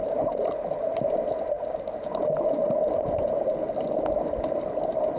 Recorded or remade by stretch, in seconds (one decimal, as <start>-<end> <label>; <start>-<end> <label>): 0.0-1.1 remade; 1.1-5.2 recorded